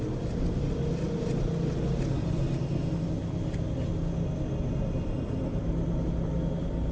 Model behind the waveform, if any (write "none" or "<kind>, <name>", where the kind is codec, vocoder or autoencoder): none